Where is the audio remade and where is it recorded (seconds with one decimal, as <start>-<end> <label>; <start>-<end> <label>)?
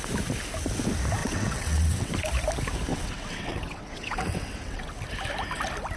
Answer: 0.0-1.2 recorded; 1.2-2.1 remade; 2.1-2.9 recorded; 2.9-4.9 remade; 4.9-6.0 recorded